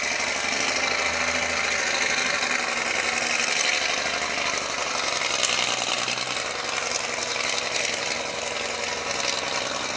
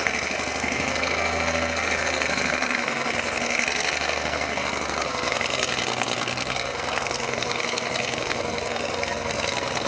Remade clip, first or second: second